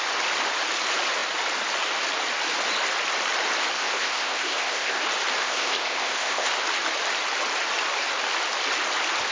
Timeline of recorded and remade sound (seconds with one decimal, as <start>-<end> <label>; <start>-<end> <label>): 0.0-3.8 recorded; 3.8-5.0 remade; 5.0-5.4 recorded; 5.4-6.5 remade; 6.5-9.3 recorded